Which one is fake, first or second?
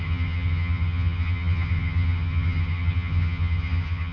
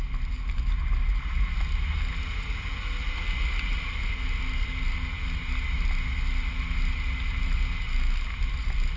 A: first